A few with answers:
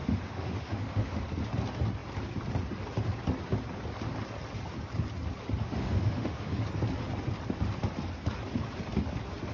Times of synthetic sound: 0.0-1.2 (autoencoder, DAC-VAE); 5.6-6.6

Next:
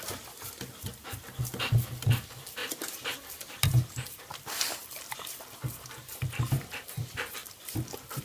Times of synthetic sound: 2.6-6.9 (vocoder, BigVGAN v2)